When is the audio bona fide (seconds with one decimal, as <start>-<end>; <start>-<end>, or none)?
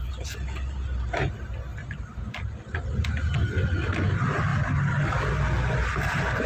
0.0-6.5